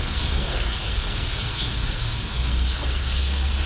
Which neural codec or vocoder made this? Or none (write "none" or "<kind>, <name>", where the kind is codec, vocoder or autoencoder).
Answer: codec, SNAC